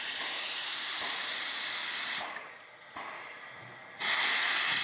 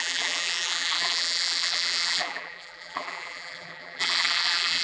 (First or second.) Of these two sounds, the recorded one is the first